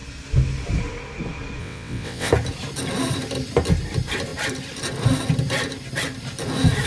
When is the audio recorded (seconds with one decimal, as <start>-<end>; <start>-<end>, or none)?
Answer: 0.0-1.6; 2.3-6.9